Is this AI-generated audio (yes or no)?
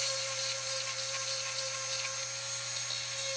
no